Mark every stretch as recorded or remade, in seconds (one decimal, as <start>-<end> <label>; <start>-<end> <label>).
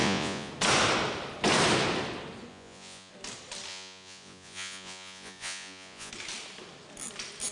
0.0-0.5 remade; 0.5-2.5 recorded; 2.5-3.1 remade; 3.1-3.7 recorded; 3.7-6.1 remade; 6.1-7.5 recorded